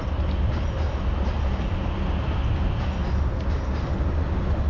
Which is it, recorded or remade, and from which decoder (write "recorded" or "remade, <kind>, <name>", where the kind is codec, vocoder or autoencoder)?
recorded